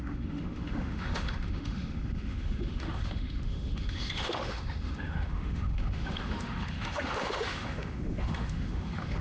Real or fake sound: fake